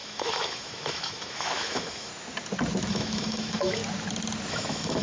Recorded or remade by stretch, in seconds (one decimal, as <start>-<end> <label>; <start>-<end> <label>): 0.0-2.1 remade; 2.1-2.9 recorded; 2.9-3.8 remade; 3.8-4.5 recorded; 4.5-5.0 remade